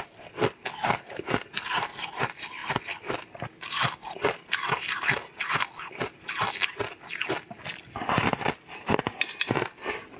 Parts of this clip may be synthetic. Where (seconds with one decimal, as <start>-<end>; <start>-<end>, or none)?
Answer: none